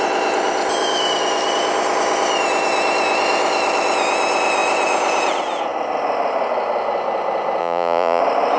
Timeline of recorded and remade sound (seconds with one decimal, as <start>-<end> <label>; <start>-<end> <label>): 0.0-7.6 recorded; 7.6-8.2 remade; 8.2-8.6 recorded